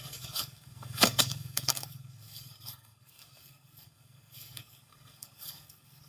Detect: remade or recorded remade